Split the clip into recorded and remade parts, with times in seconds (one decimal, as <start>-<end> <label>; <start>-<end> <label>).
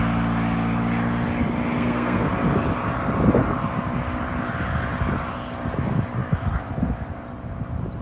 0.0-1.7 recorded; 1.7-2.3 remade; 2.3-8.0 recorded